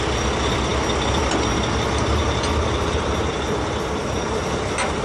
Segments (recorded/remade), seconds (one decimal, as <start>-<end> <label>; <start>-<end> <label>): 0.0-5.0 recorded